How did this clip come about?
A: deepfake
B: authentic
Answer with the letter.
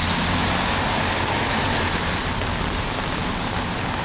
B